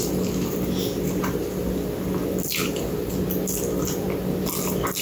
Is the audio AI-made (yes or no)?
no